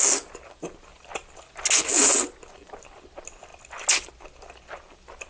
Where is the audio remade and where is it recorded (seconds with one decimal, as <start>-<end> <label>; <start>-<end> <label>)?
0.0-5.3 recorded